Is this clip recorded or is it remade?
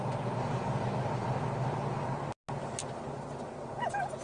recorded